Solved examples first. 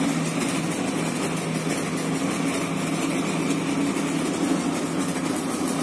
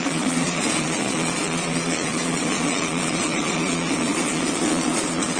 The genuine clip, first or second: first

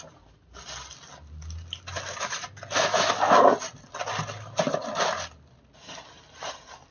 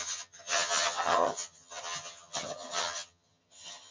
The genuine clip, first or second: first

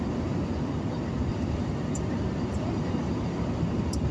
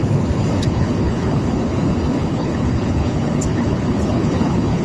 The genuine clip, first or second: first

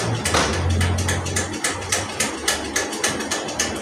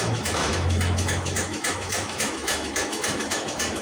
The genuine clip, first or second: first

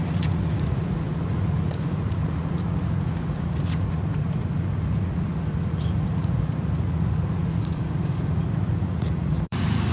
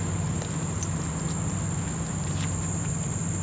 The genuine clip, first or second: second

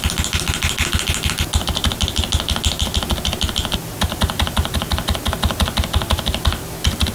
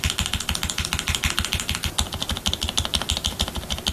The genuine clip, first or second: first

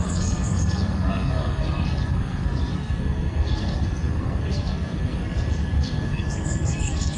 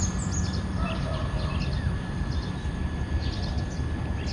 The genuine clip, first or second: second